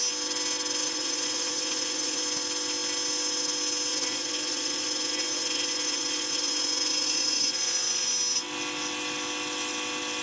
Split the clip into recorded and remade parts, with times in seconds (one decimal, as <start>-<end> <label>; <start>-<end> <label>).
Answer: 0.0-0.8 recorded; 0.8-2.2 remade; 2.2-3.9 recorded; 3.9-8.1 remade; 8.1-10.2 recorded